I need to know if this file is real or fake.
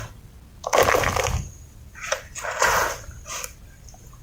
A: real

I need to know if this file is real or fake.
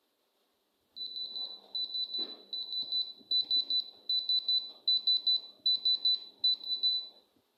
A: real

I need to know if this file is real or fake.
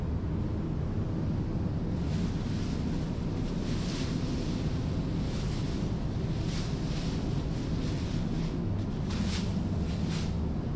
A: real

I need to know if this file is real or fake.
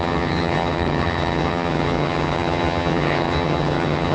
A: fake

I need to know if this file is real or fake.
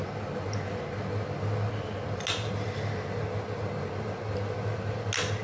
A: real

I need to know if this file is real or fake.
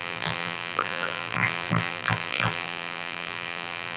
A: fake